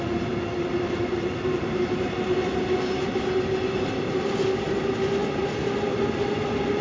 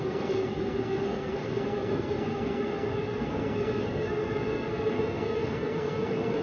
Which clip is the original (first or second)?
first